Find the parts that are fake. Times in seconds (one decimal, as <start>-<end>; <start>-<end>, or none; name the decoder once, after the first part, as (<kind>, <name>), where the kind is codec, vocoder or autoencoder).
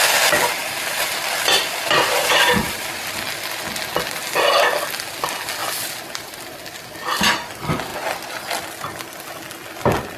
0.6-3.6 (vocoder, BigVGAN v2)